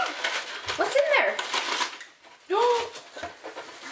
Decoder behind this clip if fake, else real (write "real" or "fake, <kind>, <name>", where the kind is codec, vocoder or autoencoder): real